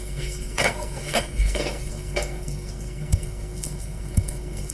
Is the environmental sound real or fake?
fake